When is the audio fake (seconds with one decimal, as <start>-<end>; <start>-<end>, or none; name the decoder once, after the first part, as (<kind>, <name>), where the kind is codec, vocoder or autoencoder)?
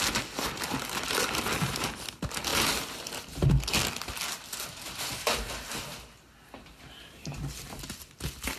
2.5-3.0 (vocoder, BigVGAN v2); 7.2-7.8